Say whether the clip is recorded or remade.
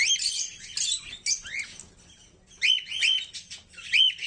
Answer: recorded